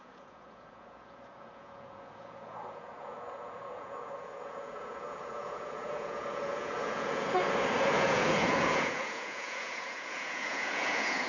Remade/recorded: remade